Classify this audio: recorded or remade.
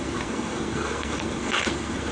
remade